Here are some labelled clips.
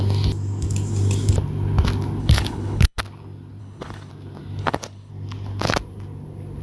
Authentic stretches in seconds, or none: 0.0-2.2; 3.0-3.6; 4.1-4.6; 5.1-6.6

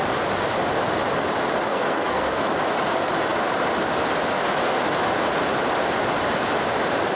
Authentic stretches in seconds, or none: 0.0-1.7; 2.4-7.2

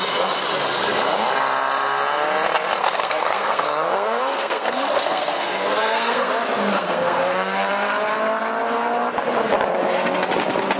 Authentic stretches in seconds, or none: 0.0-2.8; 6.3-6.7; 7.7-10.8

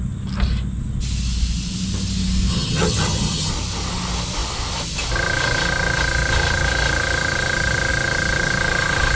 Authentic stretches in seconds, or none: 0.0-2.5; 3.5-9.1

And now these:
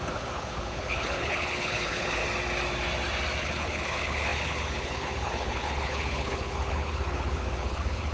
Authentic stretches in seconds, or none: 2.2-3.4

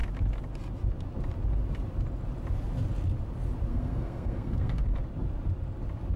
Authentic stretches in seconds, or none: 0.0-3.7; 4.8-6.2